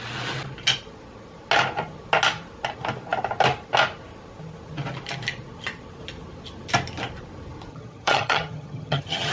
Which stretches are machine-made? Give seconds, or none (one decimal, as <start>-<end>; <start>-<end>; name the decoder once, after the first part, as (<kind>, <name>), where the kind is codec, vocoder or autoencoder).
7.7-9.3 (vocoder, HiFi-GAN)